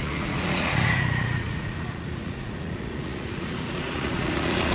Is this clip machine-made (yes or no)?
yes